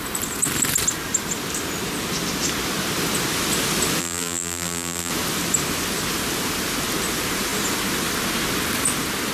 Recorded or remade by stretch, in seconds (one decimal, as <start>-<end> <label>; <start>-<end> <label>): 0.0-4.0 recorded; 4.0-5.1 remade; 5.1-9.3 recorded